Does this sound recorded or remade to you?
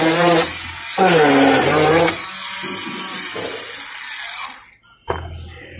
recorded